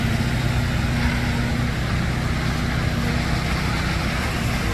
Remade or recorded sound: recorded